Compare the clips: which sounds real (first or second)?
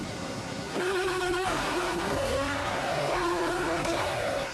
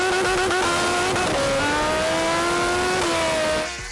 second